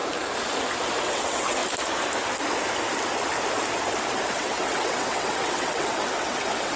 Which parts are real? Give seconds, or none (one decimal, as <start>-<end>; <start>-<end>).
0.0-1.0; 1.6-4.3